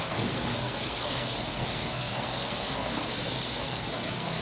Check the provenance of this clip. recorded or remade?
remade